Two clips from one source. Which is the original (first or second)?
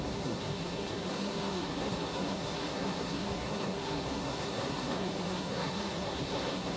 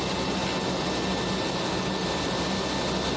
second